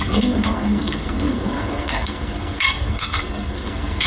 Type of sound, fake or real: fake